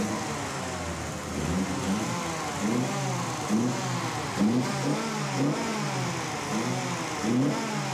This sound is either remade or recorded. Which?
recorded